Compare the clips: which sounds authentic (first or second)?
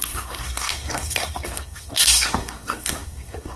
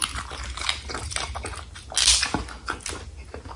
second